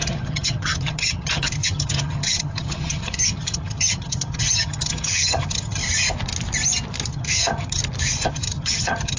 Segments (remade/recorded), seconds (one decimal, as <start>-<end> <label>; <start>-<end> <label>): 0.0-5.8 remade; 5.8-7.1 recorded; 7.1-7.8 remade; 7.8-8.3 recorded; 8.3-9.2 remade